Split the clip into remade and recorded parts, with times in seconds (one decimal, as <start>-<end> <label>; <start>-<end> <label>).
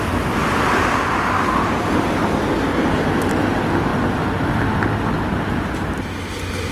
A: 0.0-0.4 recorded; 0.4-1.9 remade; 1.9-6.7 recorded